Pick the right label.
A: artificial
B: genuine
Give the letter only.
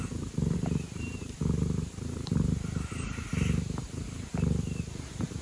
A